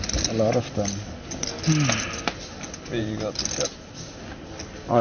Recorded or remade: recorded